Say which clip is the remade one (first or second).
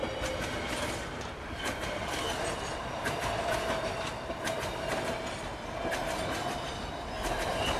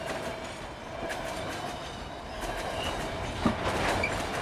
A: second